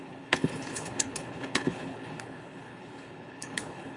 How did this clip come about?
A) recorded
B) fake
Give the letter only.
B